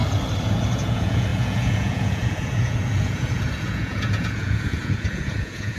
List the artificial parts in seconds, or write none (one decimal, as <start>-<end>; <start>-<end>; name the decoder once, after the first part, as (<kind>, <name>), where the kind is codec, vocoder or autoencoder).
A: 0.5-5.8 (vocoder, Vocos)